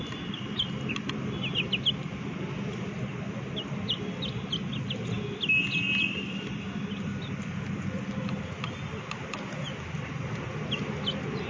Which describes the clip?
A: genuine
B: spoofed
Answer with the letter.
A